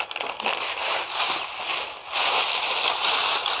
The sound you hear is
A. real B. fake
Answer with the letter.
A